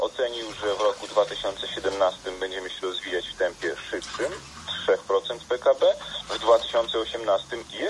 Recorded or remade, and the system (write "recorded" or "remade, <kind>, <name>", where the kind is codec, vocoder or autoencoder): recorded